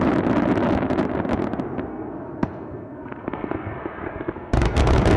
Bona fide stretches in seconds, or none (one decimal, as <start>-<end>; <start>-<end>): 0.0-1.9; 4.8-5.2